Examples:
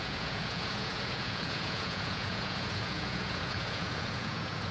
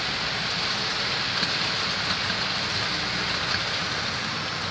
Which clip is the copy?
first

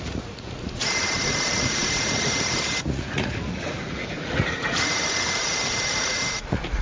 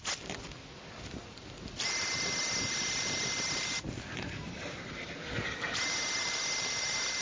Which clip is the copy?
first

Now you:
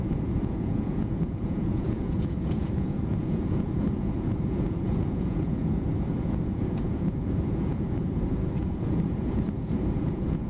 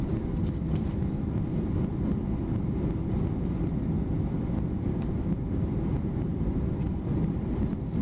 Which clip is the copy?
first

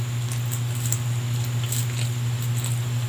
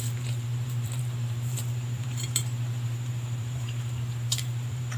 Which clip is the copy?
second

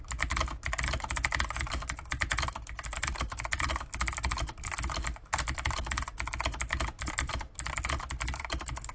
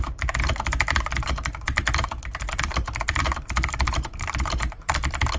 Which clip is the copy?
second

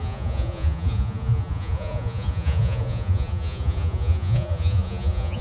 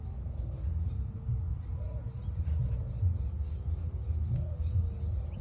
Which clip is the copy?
first